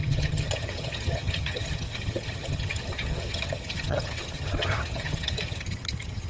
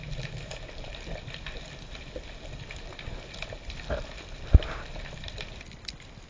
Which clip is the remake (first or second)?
first